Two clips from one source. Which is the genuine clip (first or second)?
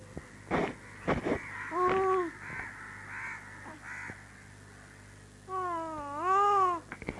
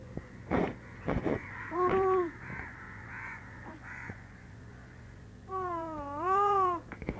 first